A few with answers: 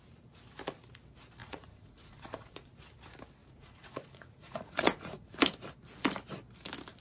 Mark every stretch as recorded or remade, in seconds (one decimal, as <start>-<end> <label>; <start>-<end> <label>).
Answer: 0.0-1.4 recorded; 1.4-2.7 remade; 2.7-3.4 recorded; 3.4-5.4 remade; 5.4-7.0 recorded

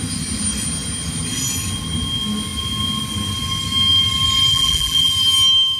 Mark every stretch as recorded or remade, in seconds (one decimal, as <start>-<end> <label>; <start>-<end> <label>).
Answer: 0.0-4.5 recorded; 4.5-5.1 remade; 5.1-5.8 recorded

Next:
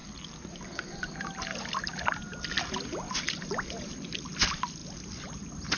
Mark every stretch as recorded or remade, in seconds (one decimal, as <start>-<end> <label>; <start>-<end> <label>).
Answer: 0.0-4.8 recorded; 4.8-5.8 remade

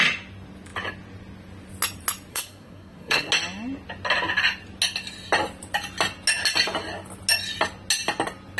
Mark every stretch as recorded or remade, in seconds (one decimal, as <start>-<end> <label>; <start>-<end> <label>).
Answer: 0.0-2.3 recorded; 2.3-3.3 remade; 3.3-8.6 recorded

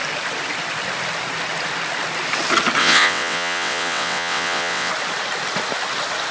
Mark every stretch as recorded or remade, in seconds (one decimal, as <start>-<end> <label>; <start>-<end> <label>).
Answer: 0.0-2.8 recorded; 2.8-4.9 remade; 4.9-6.3 recorded

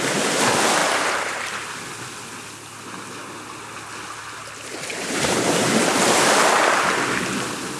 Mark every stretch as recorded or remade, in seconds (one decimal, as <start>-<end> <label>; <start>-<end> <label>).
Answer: 0.0-0.8 recorded; 0.8-1.5 remade; 1.5-4.9 recorded; 4.9-5.7 remade; 5.7-7.8 recorded

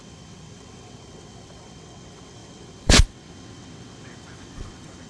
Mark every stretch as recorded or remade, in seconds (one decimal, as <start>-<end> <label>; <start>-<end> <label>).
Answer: 0.0-5.1 remade